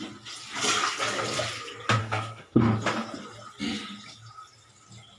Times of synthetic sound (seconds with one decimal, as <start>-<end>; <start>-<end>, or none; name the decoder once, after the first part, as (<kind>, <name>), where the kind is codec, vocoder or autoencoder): 2.0-2.6 (codec, SNAC)